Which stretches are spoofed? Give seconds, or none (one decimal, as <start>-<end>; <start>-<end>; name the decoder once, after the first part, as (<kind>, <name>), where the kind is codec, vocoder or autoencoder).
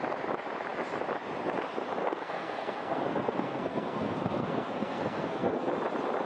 2.0-5.7 (codec, SNAC)